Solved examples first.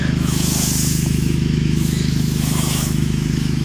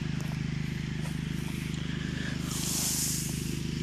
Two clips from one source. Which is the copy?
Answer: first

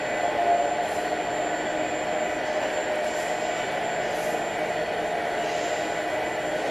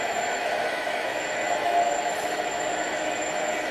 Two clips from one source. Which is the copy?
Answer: second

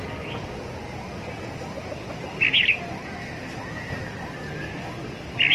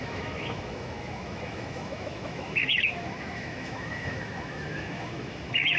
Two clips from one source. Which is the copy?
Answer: second